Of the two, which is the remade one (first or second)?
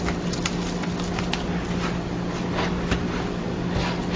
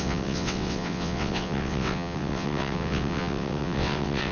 second